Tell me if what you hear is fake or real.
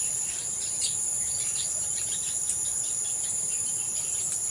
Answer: real